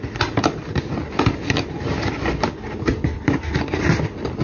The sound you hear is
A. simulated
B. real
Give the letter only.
A